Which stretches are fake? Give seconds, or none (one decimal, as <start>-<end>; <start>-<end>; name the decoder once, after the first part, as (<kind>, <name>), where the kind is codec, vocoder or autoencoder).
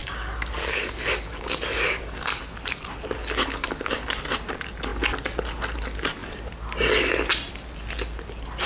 0.0-2.4 (codec, DAC); 3.2-4.2